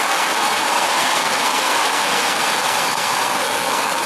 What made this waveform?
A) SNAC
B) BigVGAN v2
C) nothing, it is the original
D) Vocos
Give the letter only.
A